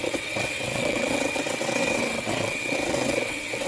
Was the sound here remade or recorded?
remade